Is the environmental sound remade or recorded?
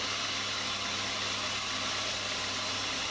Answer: recorded